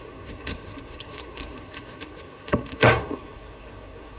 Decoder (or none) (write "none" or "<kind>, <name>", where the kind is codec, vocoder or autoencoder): codec, SNAC